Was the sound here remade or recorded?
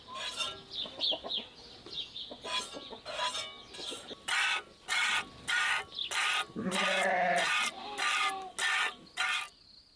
recorded